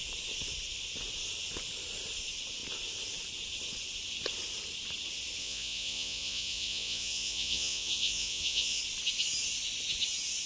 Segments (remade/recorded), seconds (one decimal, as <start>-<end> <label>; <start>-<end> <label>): 0.0-5.4 recorded; 5.4-8.8 remade; 8.8-10.5 recorded